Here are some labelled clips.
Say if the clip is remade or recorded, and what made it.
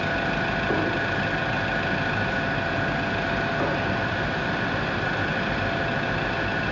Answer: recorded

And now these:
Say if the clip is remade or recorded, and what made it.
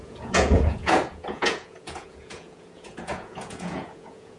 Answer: remade, vocoder, Vocos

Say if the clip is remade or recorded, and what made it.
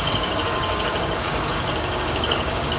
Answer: remade, codec, DAC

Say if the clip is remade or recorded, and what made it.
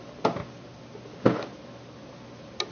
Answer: recorded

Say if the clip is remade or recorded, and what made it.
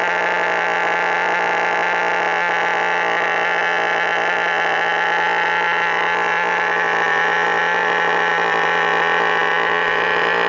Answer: recorded